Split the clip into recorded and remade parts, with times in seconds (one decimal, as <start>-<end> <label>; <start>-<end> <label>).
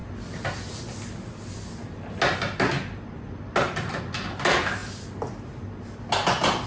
0.0-6.7 recorded